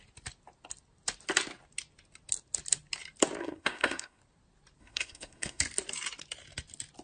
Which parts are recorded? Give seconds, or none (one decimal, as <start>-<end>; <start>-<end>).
0.0-3.4; 4.2-4.8; 5.6-7.0